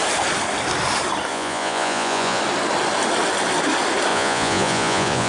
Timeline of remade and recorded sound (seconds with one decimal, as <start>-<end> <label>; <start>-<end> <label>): 0.0-1.3 recorded; 1.3-2.4 remade; 2.4-4.1 recorded; 4.1-5.3 remade